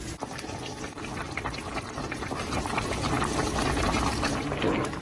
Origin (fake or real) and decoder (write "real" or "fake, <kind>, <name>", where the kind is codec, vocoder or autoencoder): fake, vocoder, BigVGAN v2